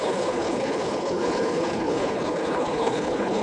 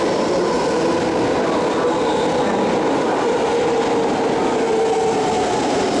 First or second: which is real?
second